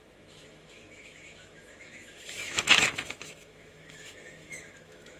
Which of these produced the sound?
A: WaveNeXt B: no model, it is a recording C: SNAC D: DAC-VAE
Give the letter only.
D